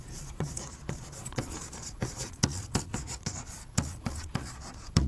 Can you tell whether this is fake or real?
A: fake